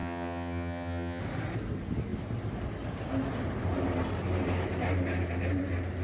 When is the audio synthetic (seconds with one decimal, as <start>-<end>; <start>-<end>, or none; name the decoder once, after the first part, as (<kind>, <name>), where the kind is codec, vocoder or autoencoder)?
0.0-1.2 (vocoder, HiFi-GAN)